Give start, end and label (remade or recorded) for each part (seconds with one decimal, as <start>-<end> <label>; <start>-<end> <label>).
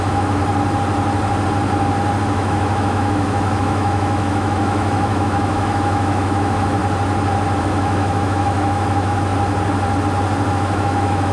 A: 0.0-0.4 remade; 0.4-2.2 recorded; 2.2-6.8 remade; 6.8-7.6 recorded; 7.6-9.3 remade; 9.3-10.5 recorded; 10.5-11.3 remade